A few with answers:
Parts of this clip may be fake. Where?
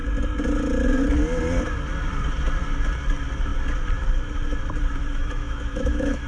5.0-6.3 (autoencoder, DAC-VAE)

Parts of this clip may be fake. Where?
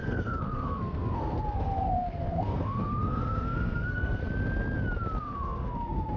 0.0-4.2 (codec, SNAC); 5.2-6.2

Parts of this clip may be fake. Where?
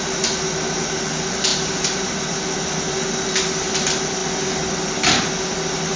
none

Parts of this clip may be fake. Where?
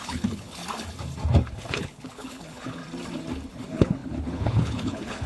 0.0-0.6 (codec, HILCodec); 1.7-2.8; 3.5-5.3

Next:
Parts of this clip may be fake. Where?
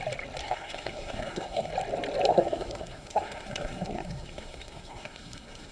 0.4-1.7 (codec, SNAC); 2.3-5.7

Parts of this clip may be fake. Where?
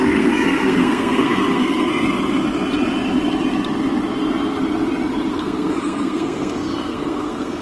0.0-1.9 (codec, SNAC); 5.3-7.6